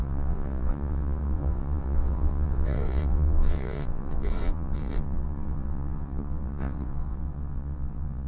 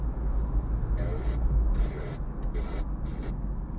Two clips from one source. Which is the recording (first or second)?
second